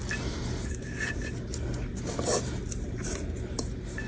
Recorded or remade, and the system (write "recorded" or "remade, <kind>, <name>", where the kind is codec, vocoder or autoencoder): remade, vocoder, BigVGAN v2